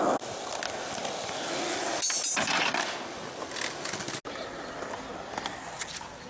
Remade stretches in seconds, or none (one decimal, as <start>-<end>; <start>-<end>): none